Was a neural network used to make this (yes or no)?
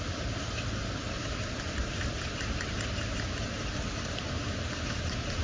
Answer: no